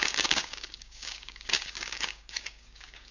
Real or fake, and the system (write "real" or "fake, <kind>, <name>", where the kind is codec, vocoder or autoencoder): fake, codec, DAC